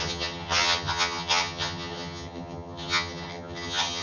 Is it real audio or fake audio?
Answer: fake